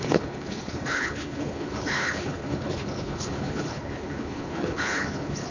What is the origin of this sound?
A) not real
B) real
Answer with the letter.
A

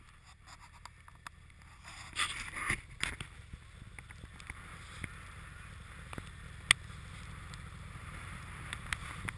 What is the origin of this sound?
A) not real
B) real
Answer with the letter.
B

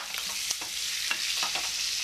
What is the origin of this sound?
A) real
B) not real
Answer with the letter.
A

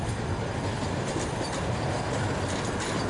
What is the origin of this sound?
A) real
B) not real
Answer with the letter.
A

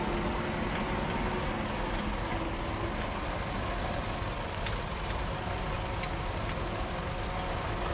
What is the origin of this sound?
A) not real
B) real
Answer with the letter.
B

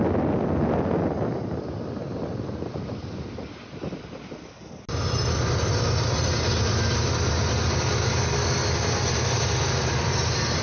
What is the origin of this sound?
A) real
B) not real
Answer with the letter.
A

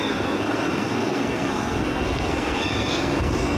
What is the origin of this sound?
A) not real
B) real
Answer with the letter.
A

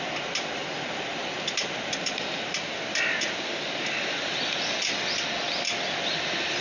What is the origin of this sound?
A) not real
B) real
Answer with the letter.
B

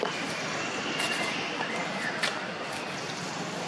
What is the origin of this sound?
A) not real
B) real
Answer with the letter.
B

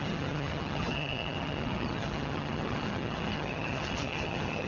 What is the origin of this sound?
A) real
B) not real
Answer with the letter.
B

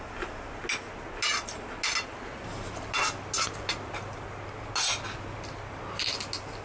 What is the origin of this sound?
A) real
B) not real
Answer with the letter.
A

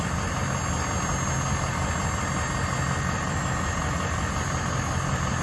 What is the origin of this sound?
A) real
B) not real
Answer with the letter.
A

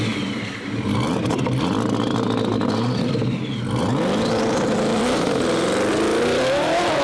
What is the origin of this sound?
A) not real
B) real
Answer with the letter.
B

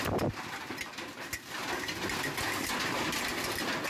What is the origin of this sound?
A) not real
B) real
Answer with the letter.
B